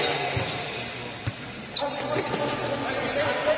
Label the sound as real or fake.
real